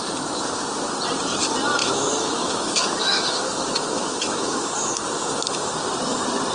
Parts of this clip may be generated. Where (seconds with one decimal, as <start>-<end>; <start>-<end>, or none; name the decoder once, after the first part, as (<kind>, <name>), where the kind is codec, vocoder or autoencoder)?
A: 1.8-5.7 (autoencoder, DAC-VAE)